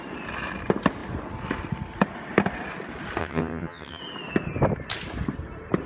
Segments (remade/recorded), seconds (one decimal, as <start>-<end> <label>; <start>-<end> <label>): 0.0-3.2 recorded; 3.2-4.0 remade; 4.0-5.9 recorded